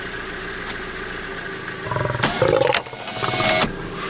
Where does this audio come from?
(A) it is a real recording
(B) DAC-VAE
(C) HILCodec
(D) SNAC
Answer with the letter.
A